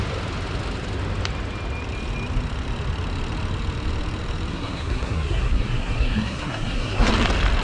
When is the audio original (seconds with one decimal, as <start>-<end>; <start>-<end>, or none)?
0.0-4.5; 7.1-7.6